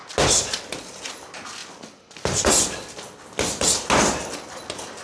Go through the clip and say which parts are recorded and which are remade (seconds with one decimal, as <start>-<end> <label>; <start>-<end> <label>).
0.0-5.0 recorded